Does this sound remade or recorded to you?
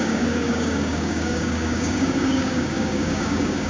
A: remade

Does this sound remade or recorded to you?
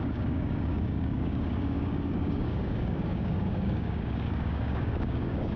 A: remade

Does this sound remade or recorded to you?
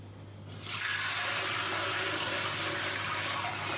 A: recorded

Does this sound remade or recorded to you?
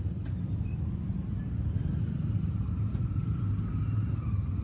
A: recorded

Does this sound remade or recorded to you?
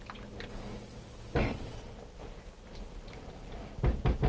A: recorded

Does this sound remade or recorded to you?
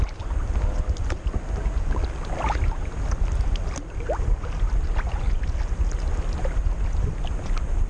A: recorded